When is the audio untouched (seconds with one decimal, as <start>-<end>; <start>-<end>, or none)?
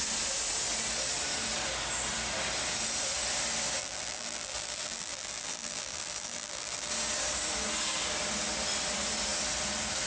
0.0-3.8; 6.9-10.1